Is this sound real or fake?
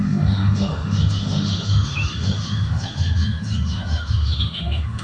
fake